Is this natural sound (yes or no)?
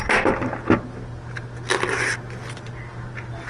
yes